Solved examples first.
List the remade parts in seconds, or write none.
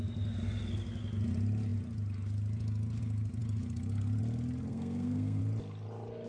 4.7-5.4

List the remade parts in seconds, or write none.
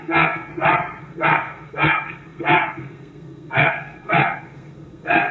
0.0-0.5; 1.0-5.3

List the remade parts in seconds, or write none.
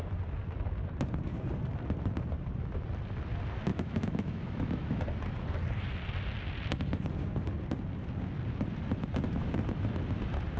3.7-5.0